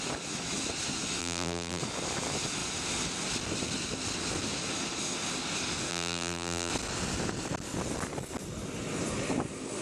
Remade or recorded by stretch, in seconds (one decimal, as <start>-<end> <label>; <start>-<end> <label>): 0.0-1.2 recorded; 1.2-1.8 remade; 1.8-5.9 recorded; 5.9-6.7 remade; 6.7-9.8 recorded